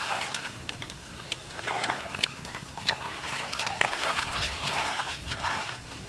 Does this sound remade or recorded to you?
remade